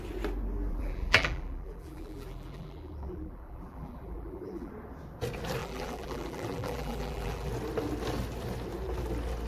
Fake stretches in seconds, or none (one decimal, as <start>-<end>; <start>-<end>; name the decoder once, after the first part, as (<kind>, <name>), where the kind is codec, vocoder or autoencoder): 0.7-4.7 (vocoder, BigVGAN v2); 5.6-7.5